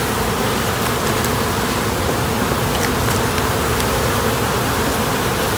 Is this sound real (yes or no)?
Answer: yes